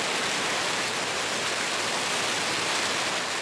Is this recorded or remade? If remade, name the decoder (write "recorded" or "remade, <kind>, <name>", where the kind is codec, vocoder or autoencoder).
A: recorded